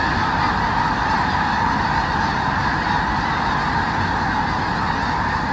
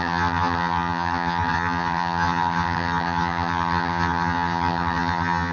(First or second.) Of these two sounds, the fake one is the second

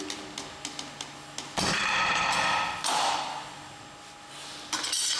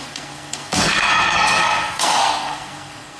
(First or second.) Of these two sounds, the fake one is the second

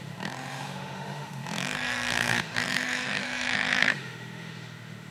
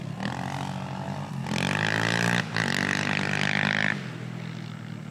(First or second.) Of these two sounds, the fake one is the first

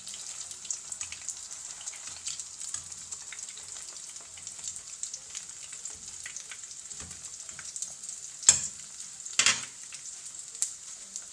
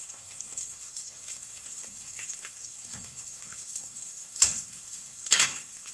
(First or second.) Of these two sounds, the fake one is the second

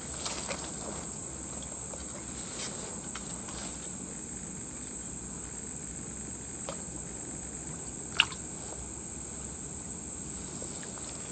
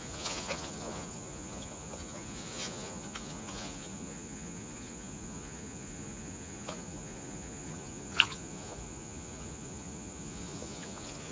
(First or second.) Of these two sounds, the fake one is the second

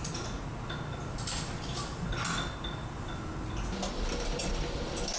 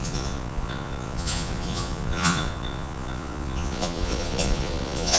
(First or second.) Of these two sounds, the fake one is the second